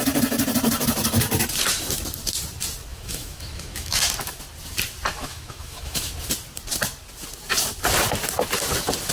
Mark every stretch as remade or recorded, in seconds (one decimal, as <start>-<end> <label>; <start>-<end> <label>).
0.0-2.9 recorded; 2.9-4.0 remade; 4.0-5.2 recorded; 5.2-6.1 remade; 6.1-9.1 recorded